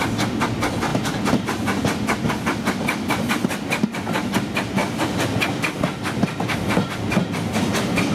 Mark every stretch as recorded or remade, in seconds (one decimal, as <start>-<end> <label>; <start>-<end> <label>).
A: 0.0-0.9 recorded; 0.9-2.3 remade; 2.3-4.8 recorded; 4.8-7.0 remade; 7.0-8.1 recorded